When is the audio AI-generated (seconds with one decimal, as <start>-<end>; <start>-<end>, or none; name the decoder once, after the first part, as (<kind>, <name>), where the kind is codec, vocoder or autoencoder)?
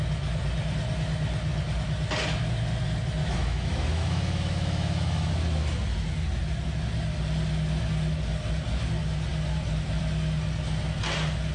3.2-5.3 (autoencoder, DAC-VAE)